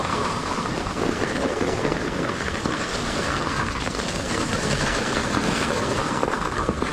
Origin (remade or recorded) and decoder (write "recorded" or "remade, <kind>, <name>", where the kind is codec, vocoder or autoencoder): remade, codec, SNAC